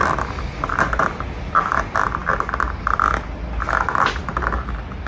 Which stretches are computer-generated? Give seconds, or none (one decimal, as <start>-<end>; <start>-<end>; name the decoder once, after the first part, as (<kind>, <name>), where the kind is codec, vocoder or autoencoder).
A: none